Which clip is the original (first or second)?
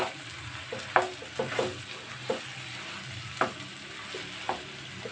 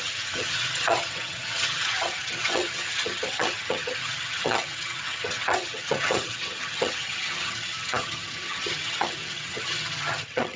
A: first